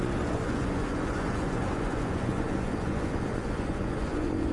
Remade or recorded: remade